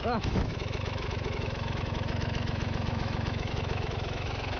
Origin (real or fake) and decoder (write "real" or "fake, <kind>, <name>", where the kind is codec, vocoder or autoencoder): fake, autoencoder, DAC-VAE